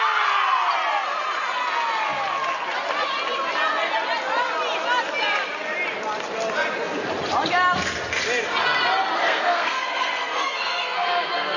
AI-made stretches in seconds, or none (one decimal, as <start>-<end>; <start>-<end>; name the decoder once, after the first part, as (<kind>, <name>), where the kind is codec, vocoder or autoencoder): 9.2-11.6 (codec, SNAC)